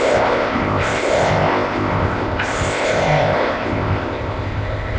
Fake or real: fake